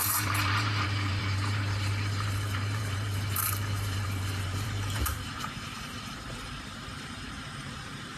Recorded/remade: remade